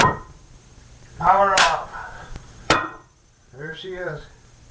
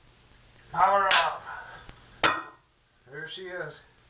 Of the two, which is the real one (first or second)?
second